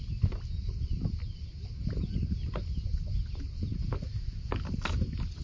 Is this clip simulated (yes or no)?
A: no